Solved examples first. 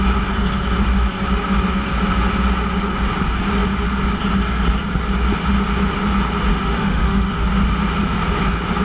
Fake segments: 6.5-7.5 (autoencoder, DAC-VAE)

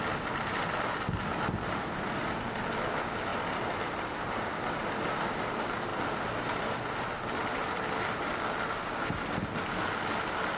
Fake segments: none

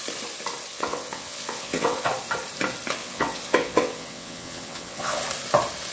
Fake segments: 0.7-2.1 (vocoder, WaveNeXt); 3.0-5.2